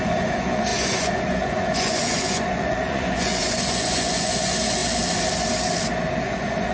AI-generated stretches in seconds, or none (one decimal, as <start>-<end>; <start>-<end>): 0.0-4.8; 6.2-6.7